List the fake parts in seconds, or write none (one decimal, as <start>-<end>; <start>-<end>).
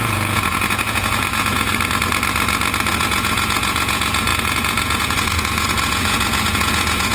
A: 0.0-1.7; 2.9-7.1